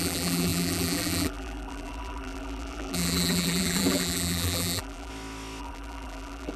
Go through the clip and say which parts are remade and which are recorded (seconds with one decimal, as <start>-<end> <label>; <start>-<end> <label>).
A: 0.0-5.1 remade; 5.1-5.6 recorded; 5.6-6.6 remade